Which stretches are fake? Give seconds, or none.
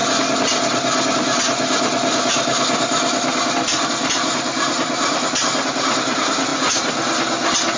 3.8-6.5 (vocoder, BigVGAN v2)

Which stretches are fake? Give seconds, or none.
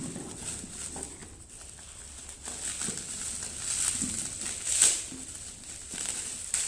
none